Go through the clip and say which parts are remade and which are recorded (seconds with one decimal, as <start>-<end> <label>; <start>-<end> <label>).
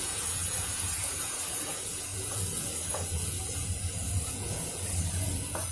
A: 0.0-5.7 remade